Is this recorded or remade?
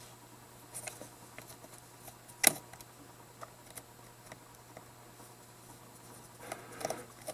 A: recorded